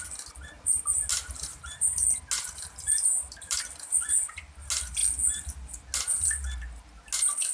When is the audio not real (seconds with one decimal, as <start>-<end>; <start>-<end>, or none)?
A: none